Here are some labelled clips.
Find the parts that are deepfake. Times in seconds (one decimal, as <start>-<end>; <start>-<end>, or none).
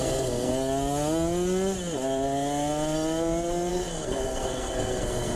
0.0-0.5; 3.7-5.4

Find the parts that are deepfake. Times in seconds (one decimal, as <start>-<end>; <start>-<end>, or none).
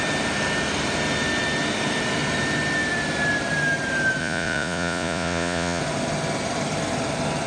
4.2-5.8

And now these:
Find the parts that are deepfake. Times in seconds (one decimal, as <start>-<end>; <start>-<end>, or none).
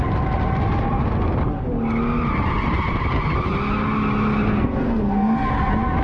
4.5-5.5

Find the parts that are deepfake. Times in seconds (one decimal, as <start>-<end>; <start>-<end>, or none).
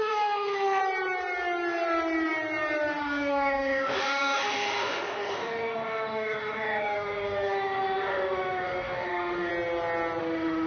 0.0-0.8; 3.0-9.5; 10.2-10.7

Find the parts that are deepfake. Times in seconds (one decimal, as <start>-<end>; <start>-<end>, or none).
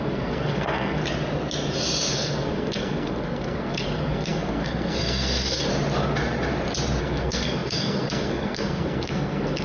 0.0-1.0; 2.1-5.7; 7.0-9.6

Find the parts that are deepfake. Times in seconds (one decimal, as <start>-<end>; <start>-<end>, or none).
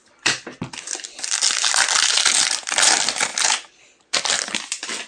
none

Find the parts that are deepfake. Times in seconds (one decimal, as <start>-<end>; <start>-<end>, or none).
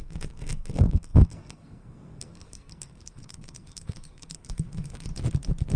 0.0-5.1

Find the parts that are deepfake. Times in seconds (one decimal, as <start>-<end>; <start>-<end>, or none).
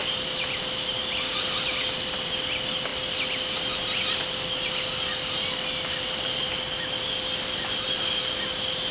none